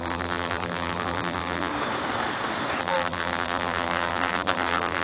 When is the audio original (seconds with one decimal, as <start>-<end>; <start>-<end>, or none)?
1.7-2.8